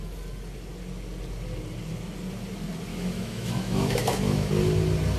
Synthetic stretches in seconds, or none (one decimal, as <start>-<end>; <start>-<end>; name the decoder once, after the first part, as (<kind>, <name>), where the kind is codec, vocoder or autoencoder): 2.9-4.5 (autoencoder, DAC-VAE)